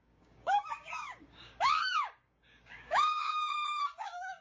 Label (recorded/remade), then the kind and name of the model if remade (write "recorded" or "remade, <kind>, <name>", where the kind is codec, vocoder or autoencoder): remade, codec, DAC